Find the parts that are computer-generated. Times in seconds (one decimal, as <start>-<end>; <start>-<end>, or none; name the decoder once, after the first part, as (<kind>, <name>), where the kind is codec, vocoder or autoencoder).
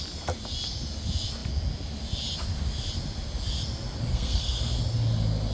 4.1-4.6 (codec, SNAC)